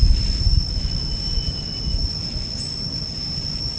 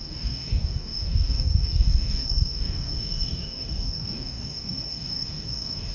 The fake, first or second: second